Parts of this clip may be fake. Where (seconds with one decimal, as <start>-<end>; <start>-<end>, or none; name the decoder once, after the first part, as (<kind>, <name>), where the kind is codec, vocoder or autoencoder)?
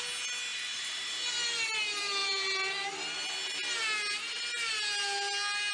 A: 0.5-1.1 (vocoder, BigVGAN v2)